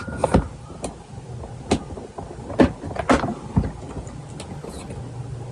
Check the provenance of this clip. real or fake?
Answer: real